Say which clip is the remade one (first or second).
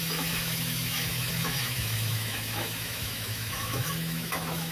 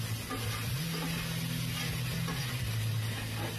first